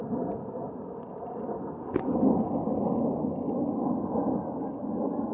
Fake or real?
real